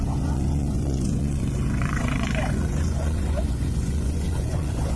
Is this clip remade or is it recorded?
remade